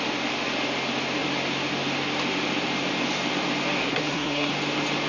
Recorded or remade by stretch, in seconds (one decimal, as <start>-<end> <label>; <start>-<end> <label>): 0.0-3.8 recorded; 3.8-4.5 remade; 4.5-5.1 recorded